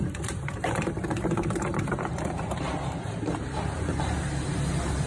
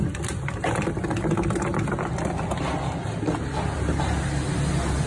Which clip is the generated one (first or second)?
first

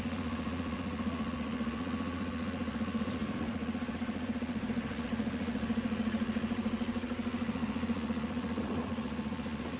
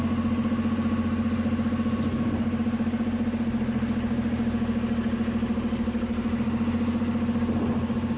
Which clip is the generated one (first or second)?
first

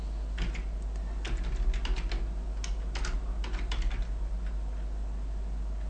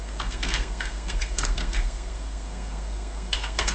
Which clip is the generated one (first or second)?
second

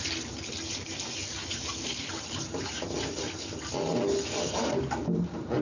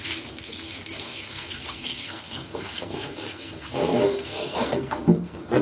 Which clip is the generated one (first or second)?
second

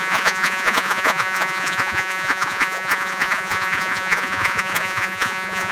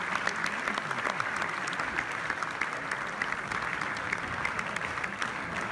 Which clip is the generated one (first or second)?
first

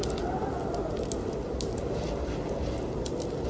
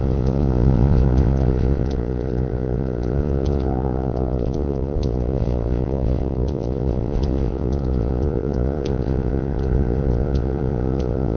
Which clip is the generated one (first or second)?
second